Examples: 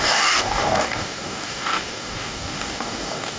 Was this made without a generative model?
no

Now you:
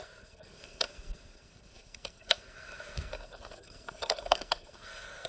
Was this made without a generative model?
no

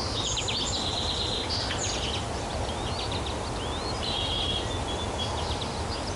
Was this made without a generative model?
yes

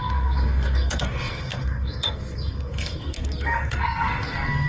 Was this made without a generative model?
no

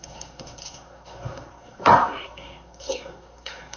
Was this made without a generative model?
no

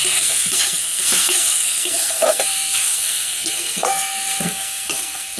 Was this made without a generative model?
no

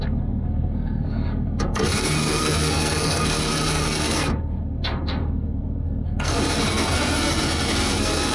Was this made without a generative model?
no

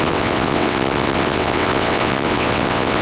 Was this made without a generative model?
no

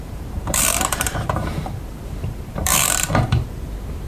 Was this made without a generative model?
no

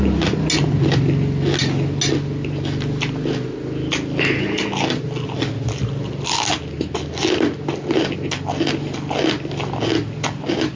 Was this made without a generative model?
yes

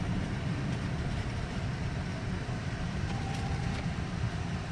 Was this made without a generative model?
no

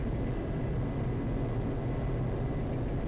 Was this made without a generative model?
yes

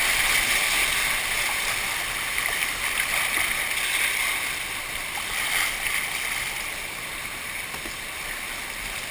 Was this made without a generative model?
yes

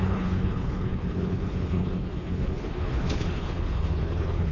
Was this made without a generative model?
no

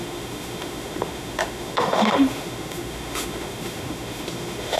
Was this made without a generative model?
no